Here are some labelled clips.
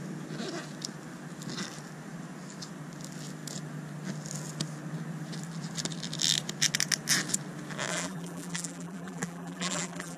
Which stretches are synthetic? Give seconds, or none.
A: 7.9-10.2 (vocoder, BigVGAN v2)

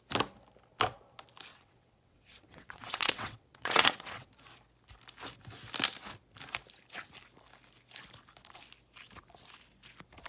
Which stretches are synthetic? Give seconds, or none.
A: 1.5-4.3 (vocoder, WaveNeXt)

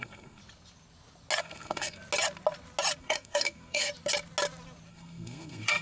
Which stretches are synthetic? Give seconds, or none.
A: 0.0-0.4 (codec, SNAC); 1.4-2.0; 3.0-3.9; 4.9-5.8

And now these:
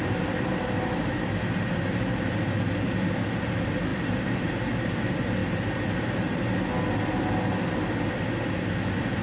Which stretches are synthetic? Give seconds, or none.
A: 0.0-0.6 (vocoder, BigVGAN v2); 3.9-4.5

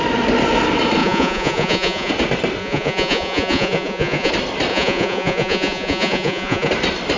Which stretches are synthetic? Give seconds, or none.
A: 1.0-2.1 (vocoder, Vocos); 2.6-4.3; 4.7-6.7

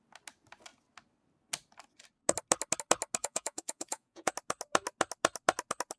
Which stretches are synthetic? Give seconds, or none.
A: 3.2-4.3 (vocoder, Vocos)

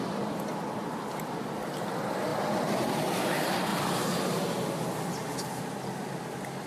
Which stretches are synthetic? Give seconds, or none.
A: none

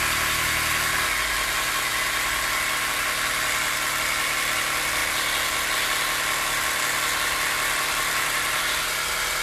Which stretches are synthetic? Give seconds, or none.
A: none